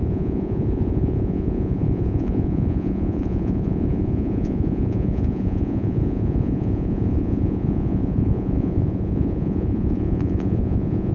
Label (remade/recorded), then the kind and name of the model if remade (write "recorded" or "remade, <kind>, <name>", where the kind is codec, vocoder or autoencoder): remade, vocoder, Vocos